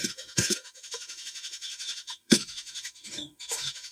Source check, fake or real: fake